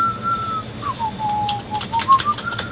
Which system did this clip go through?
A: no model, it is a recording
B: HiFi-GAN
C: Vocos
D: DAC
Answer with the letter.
A